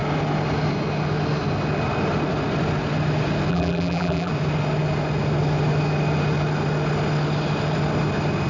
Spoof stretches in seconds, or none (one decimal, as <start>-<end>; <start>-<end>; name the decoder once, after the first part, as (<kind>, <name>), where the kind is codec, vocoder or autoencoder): 3.5-4.3 (vocoder, BigVGAN v2)